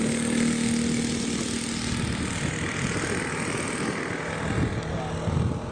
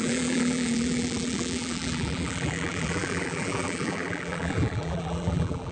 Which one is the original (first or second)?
first